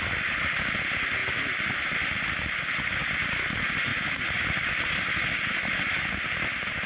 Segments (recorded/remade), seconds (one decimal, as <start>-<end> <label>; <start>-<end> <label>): 0.0-6.9 recorded